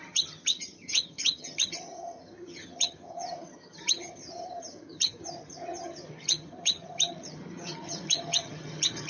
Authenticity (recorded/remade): remade